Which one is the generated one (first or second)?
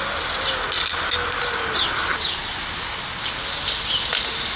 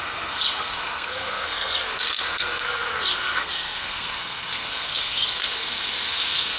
second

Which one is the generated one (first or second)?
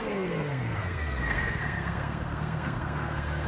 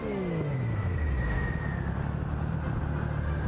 first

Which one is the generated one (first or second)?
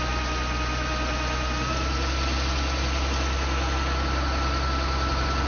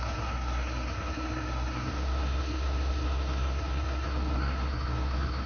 second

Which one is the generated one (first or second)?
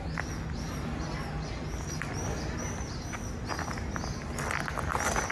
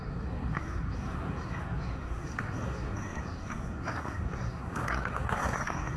second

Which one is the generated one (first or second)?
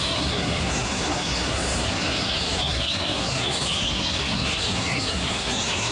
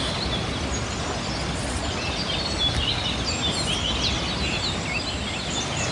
first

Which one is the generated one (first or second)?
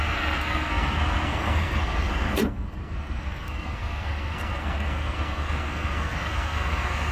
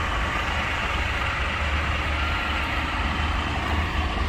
first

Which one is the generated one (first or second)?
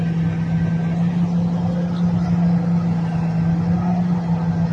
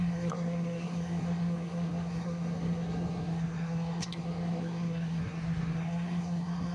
second